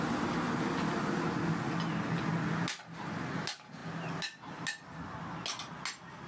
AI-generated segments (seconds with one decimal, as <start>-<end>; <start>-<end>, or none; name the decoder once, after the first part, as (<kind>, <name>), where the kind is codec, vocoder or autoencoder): none